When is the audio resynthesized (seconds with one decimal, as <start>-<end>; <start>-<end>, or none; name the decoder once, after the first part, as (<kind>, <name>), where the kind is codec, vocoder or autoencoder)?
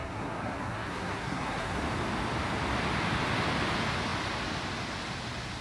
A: 0.0-1.8 (codec, SNAC)